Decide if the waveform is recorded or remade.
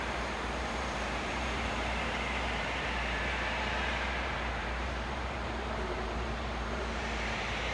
remade